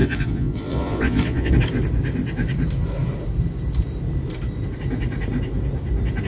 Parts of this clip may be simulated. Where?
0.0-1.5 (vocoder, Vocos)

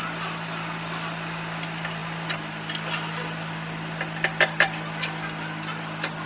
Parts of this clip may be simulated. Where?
none